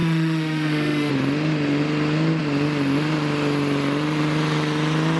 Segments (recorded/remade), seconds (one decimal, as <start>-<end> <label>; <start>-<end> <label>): 0.0-1.1 remade; 1.1-5.2 recorded